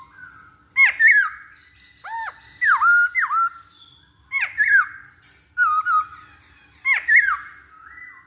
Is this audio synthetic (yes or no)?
no